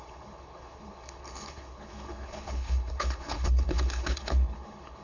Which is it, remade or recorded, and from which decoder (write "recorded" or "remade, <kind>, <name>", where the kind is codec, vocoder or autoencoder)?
remade, codec, HILCodec